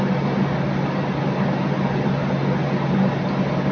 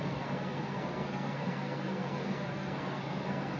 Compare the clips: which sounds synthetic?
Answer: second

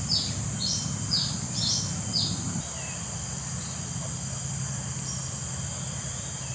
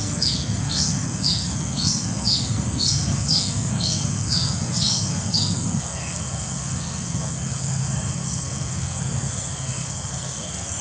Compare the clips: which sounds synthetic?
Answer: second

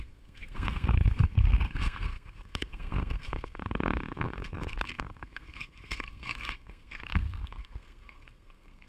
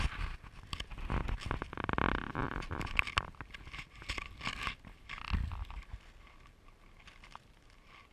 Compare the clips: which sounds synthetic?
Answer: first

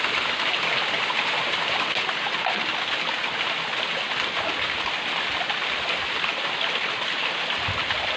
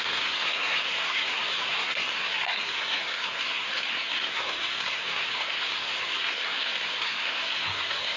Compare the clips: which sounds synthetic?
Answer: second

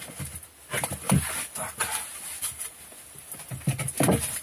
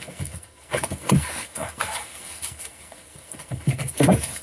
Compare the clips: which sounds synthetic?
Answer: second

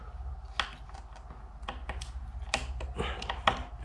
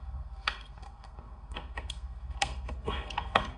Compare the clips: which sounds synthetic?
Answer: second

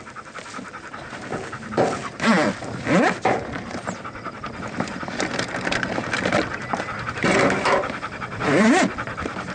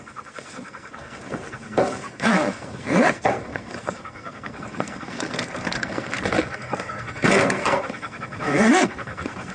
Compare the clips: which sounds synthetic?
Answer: second